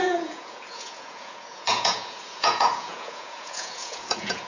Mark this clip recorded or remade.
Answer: remade